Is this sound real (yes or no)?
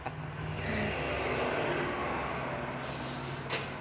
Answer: yes